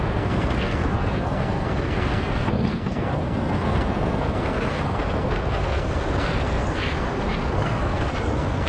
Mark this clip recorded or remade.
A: remade